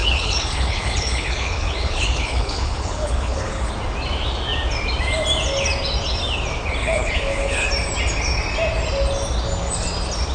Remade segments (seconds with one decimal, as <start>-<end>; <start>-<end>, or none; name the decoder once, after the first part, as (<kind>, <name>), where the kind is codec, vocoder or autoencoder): 0.0-3.7 (codec, HILCodec); 6.8-7.7